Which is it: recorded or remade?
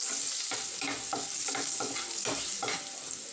recorded